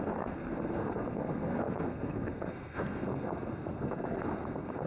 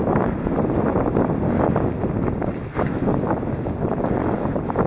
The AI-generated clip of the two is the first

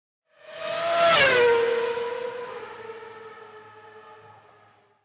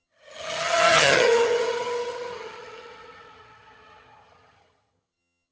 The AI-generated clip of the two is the second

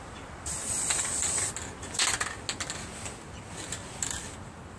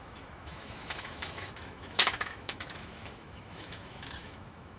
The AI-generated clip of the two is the second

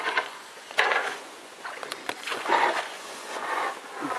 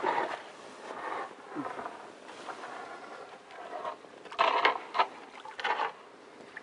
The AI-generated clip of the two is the first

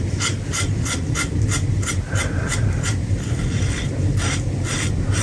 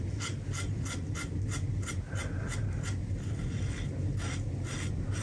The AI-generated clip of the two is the first